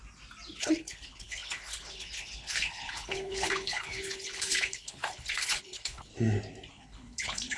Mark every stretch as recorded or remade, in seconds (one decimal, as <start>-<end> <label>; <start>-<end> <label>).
0.0-0.6 recorded; 0.6-6.1 remade; 6.1-6.7 recorded; 6.7-7.6 remade